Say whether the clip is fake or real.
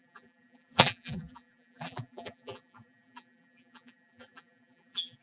fake